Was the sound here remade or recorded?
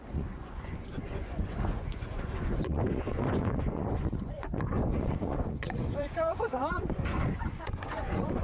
remade